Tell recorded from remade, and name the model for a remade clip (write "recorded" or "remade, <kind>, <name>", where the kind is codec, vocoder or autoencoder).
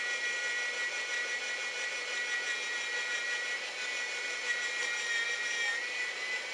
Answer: recorded